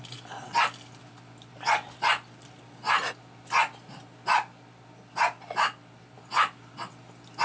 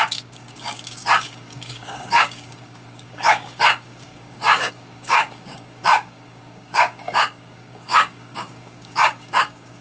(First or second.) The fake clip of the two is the second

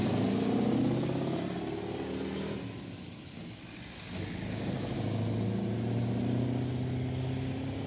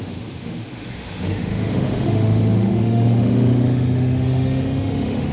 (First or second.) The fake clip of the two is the second